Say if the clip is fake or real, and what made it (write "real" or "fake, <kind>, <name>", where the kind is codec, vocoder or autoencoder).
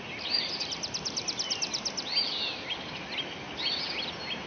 real